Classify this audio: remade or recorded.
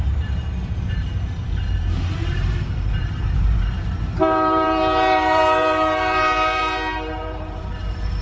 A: remade